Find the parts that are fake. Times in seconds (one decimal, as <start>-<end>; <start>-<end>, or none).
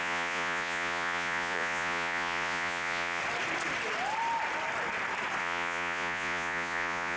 0.0-3.2; 5.4-7.2